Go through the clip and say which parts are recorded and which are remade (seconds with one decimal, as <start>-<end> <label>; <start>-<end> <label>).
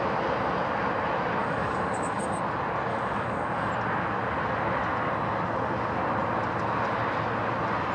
0.0-1.4 recorded; 1.4-2.4 remade; 2.4-2.9 recorded; 2.9-3.7 remade; 3.7-7.9 recorded